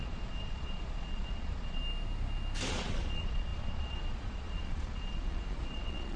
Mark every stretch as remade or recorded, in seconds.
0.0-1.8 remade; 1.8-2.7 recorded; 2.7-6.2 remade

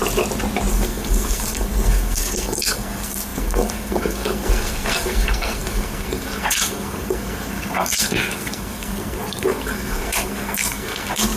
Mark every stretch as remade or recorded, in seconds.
0.0-0.7 recorded; 0.7-11.4 remade

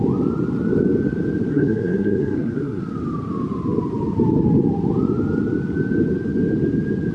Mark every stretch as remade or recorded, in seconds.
0.0-1.5 recorded; 1.5-2.8 remade; 2.8-7.1 recorded

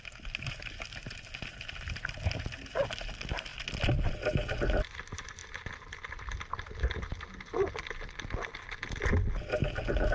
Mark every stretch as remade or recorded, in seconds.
0.0-10.1 recorded

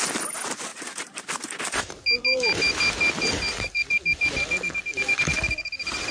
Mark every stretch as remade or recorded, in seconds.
0.0-6.1 recorded

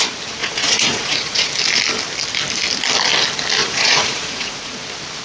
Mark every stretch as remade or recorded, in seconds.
0.0-0.4 recorded; 0.4-1.5 remade; 1.5-3.6 recorded; 3.6-4.7 remade; 4.7-5.2 recorded

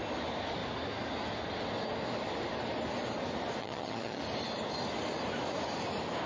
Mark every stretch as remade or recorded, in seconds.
0.0-3.6 recorded; 3.6-4.2 remade; 4.2-6.3 recorded